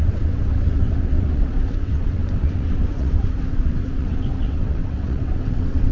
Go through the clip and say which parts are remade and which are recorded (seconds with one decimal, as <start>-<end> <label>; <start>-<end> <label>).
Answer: 0.0-5.9 remade